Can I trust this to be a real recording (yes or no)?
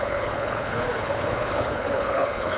no